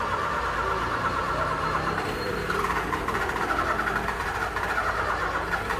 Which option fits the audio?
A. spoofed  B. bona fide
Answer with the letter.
B